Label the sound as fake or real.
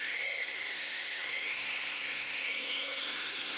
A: fake